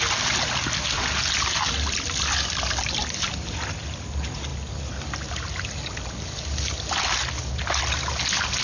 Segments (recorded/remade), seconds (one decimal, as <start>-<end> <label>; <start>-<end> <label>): 0.0-8.6 recorded